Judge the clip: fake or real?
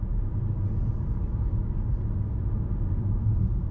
real